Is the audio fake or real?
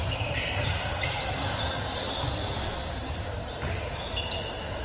real